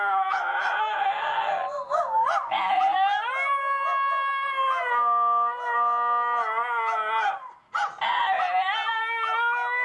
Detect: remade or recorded recorded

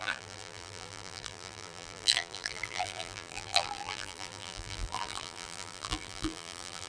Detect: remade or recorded remade